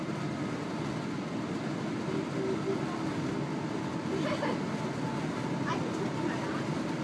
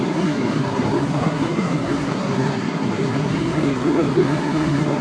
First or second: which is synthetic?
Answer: second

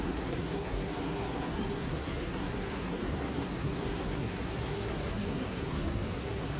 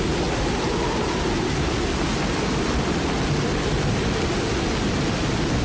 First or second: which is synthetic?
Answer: first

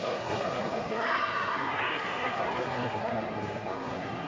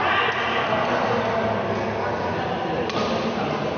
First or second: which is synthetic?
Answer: first